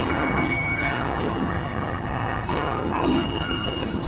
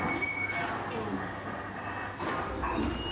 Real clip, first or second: second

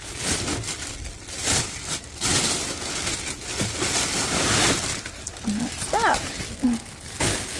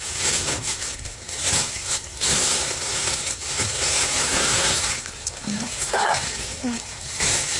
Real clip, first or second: first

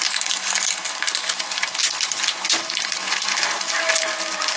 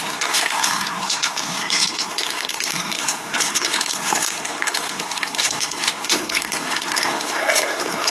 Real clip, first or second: first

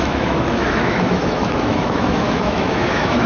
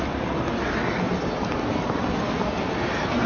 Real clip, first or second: second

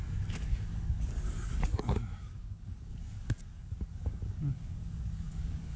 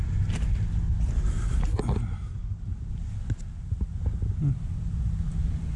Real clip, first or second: second